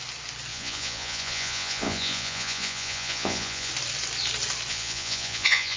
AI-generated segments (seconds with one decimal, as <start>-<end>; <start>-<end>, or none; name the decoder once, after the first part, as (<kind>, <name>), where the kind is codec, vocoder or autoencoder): 0.5-3.7 (vocoder, Vocos); 4.7-5.8

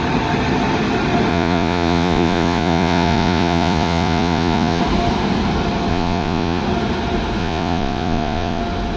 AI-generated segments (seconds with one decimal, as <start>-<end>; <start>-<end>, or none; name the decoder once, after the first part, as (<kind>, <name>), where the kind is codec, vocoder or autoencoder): 1.3-4.8 (vocoder, Vocos); 5.9-6.6; 7.4-8.6

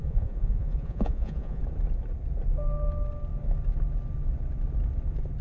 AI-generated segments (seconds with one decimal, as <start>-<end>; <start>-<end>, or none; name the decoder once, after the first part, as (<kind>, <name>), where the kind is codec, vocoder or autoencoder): 0.0-1.6 (vocoder, Vocos)

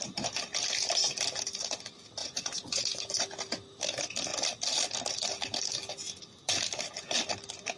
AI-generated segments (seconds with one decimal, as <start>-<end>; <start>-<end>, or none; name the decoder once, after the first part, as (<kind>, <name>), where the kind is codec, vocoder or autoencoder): 2.2-2.8 (vocoder, Vocos)

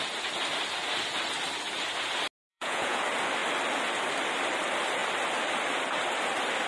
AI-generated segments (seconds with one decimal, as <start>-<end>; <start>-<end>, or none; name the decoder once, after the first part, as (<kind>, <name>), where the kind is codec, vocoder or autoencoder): 2.5-3.0 (vocoder, Vocos)

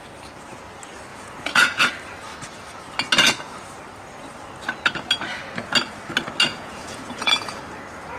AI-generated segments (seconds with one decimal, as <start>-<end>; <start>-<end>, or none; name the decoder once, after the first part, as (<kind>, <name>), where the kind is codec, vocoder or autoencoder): 1.1-1.9 (vocoder, Vocos); 6.5-7.6

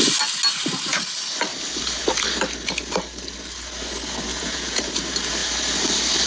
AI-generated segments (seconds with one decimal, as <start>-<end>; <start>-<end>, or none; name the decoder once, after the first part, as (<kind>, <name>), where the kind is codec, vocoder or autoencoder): 4.3-4.8 (vocoder, Vocos)

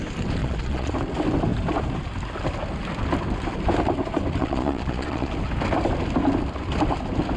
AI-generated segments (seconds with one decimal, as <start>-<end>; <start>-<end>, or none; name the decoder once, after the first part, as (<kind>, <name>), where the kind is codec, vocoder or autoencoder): 0.4-0.9 (vocoder, Vocos); 4.4-5.3